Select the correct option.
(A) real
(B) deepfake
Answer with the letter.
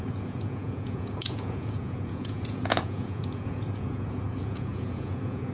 B